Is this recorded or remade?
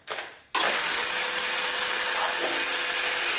recorded